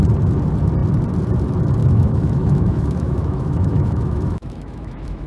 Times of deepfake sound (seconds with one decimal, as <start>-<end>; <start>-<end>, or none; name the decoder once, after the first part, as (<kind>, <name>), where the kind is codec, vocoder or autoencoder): 1.8-5.3 (autoencoder, DAC-VAE)